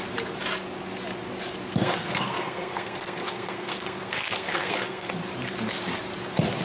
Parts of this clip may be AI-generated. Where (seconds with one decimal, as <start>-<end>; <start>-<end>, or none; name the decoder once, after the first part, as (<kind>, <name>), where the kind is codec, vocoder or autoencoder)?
1.8-5.1 (codec, SNAC)